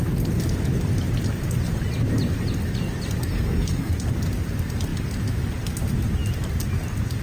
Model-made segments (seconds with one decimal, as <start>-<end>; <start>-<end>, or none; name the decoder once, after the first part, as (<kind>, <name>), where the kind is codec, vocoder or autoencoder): 3.3-3.9 (codec, SNAC)